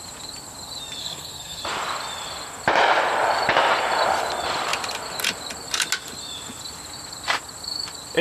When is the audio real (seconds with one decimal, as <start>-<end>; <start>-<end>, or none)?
0.0-1.0; 1.6-8.2